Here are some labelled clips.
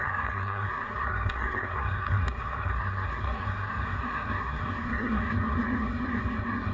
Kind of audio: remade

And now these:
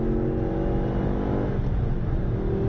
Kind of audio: recorded